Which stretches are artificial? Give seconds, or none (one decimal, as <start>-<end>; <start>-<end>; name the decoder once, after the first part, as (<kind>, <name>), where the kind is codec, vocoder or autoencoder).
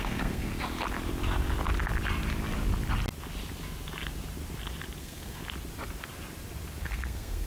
0.0-0.5 (codec, SNAC); 5.0-5.4; 6.8-7.5